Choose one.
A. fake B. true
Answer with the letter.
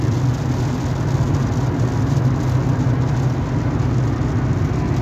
B